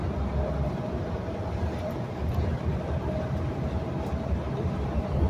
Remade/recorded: recorded